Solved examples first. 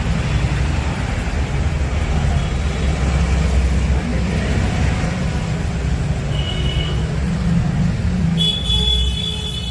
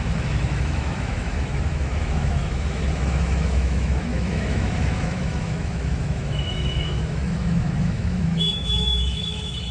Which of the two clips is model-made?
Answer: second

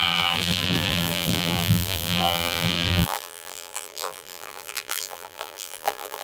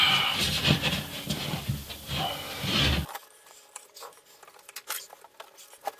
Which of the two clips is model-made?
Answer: first